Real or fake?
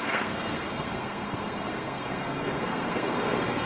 fake